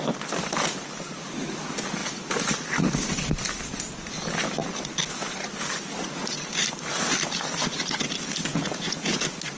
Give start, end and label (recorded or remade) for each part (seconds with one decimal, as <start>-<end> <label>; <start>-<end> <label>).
0.0-8.5 recorded; 8.5-9.2 remade; 9.2-9.6 recorded